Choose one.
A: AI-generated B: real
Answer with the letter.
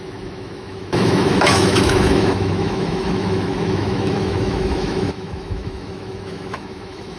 A